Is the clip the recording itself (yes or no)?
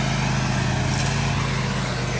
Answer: yes